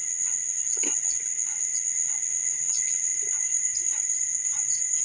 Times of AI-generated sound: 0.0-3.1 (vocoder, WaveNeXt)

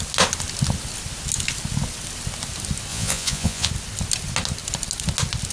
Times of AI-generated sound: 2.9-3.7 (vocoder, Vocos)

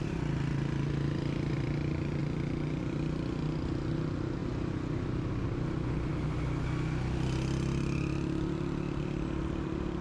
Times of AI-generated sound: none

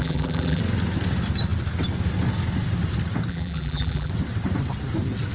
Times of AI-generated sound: 0.0-0.6 (vocoder, BigVGAN v2); 3.3-4.1

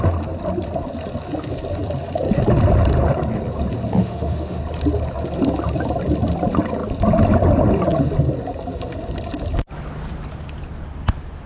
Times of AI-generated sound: 4.0-4.6 (autoencoder, DAC-VAE)

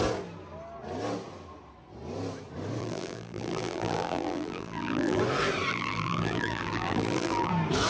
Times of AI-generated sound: 2.8-5.2 (vocoder, BigVGAN v2); 5.7-7.5

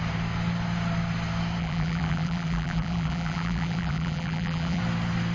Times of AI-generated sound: 1.6-4.8 (vocoder, BigVGAN v2)